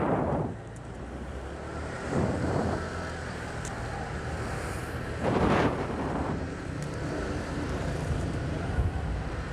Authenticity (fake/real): fake